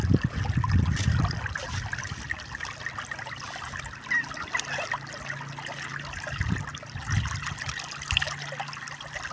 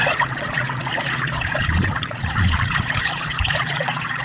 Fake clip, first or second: second